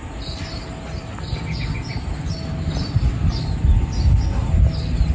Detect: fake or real real